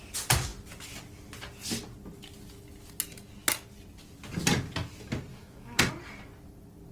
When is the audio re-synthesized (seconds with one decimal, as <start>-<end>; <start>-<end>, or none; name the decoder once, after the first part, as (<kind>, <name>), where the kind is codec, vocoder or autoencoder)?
5.3-5.9 (autoencoder, DAC-VAE)